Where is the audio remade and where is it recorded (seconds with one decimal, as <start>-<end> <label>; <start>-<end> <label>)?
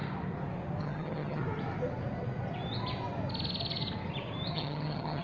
0.0-0.8 recorded; 0.8-1.4 remade; 1.4-4.5 recorded; 4.5-5.2 remade